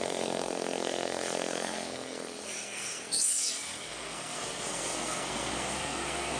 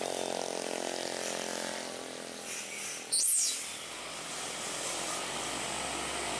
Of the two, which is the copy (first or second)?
first